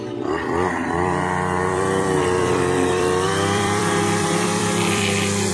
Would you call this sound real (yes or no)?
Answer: no